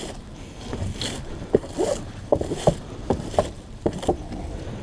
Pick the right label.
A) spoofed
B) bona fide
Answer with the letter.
A